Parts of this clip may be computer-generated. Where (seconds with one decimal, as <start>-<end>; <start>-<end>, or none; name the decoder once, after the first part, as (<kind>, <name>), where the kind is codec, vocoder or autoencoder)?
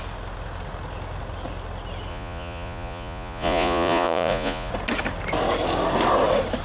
2.1-4.7 (vocoder, Vocos)